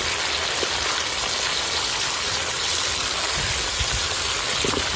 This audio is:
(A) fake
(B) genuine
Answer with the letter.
B